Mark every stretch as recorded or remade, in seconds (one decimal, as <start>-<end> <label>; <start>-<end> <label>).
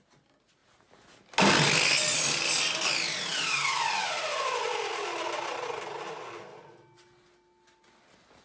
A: 0.0-8.4 recorded